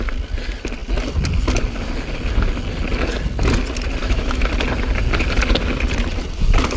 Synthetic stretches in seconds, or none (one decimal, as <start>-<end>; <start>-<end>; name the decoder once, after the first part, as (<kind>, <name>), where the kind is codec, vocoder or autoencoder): 4.0-4.5 (autoencoder, DAC-VAE)